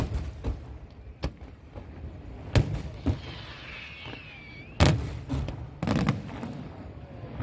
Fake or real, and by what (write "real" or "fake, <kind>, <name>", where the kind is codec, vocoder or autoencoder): real